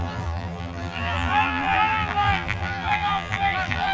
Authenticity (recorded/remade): remade